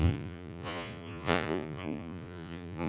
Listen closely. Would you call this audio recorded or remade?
remade